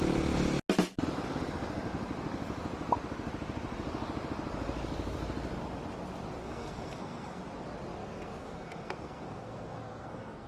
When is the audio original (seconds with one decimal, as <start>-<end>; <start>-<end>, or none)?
0.0-6.4; 7.4-8.0